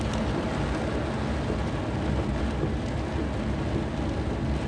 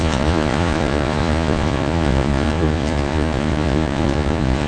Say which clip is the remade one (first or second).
second